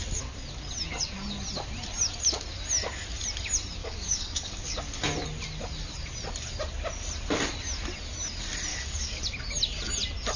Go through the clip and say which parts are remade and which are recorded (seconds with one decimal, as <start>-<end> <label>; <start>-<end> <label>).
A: 0.0-3.8 recorded; 3.8-4.8 remade; 4.8-8.7 recorded; 8.7-9.2 remade; 9.2-10.4 recorded